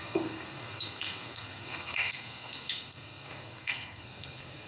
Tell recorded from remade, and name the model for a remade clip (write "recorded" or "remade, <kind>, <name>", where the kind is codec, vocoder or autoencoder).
remade, codec, SNAC